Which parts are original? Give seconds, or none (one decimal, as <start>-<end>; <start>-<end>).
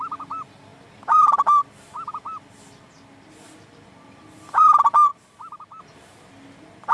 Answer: 0.0-5.1; 5.8-6.9